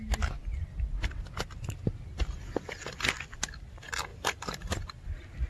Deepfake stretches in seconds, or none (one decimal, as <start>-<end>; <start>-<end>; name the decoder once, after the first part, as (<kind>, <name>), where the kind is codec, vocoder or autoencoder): 4.1-5.5 (vocoder, BigVGAN v2)